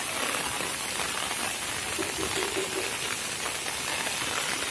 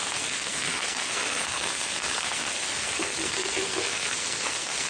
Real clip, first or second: first